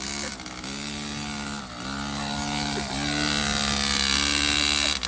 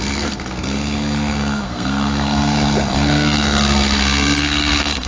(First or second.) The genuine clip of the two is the first